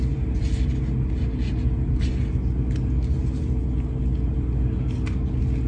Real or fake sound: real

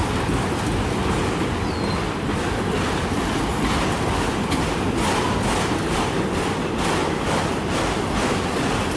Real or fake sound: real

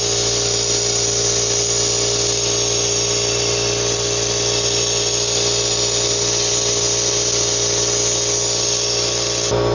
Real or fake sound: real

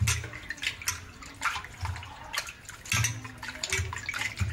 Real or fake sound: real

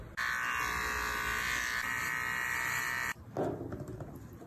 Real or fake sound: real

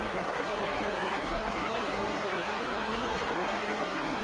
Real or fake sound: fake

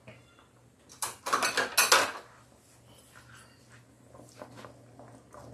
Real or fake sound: real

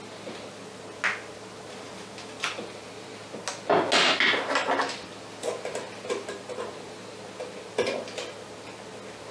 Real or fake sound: real